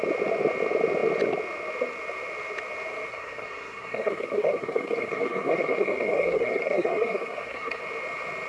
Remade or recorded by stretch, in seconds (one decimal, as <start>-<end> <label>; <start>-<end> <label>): 0.0-3.1 recorded; 3.1-7.8 remade; 7.8-8.5 recorded